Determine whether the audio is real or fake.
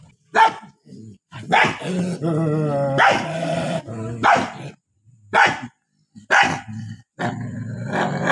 real